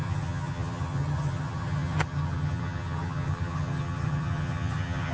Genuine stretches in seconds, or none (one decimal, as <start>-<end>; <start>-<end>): none